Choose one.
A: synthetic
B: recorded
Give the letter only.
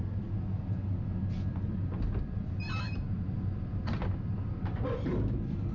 B